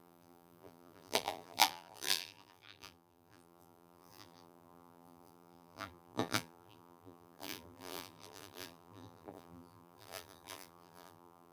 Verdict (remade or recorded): remade